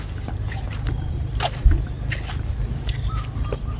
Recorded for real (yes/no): yes